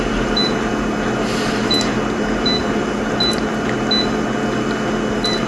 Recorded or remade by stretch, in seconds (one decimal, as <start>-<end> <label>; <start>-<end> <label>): 0.0-0.7 remade; 0.7-1.2 recorded; 1.2-3.5 remade; 3.5-5.1 recorded; 5.1-5.5 remade